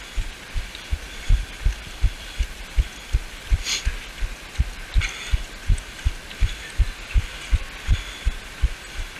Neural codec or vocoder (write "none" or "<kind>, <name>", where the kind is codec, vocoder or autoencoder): none